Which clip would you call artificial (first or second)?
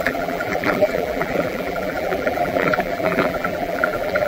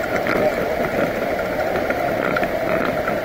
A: first